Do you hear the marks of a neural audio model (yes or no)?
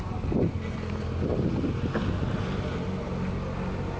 no